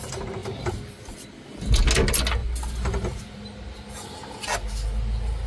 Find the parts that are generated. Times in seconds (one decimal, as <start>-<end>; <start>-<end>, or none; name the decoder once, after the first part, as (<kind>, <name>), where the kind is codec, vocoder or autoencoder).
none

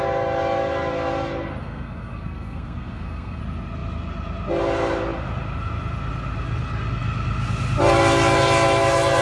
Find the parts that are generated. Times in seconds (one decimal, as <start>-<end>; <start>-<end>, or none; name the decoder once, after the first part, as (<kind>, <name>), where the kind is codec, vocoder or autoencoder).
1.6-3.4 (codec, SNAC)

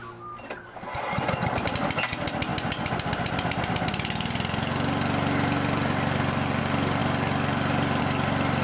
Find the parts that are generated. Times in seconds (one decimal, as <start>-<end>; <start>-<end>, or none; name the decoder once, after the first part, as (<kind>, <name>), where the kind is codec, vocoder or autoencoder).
none

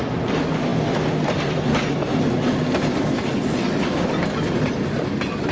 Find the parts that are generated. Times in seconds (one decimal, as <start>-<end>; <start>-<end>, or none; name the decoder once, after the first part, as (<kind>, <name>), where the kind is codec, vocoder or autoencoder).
none

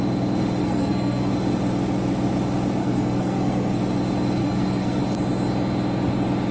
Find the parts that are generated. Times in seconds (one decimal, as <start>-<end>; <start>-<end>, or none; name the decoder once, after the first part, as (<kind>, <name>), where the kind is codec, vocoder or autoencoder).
0.6-1.3 (codec, SNAC); 2.8-3.8; 4.4-5.0

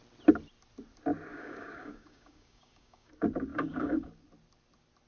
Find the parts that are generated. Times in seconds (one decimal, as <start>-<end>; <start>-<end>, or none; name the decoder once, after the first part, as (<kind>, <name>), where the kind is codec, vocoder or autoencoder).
1.3-3.1 (codec, DAC); 3.5-4.1

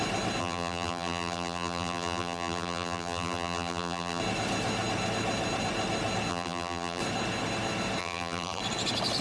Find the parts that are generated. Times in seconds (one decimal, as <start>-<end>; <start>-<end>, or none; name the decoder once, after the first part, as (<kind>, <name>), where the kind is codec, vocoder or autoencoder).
0.4-4.2 (vocoder, BigVGAN v2); 6.3-7.0; 8.0-8.6

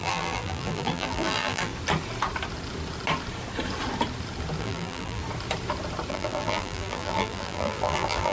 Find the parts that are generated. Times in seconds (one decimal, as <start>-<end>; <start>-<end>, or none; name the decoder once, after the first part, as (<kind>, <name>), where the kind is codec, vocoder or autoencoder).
0.0-1.7 (vocoder, BigVGAN v2); 4.6-5.2; 6.1-8.3